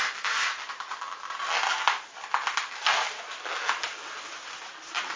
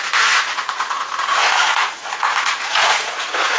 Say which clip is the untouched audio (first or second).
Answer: first